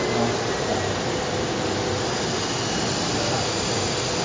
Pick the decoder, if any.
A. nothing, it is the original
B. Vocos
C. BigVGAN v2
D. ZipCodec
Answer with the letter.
A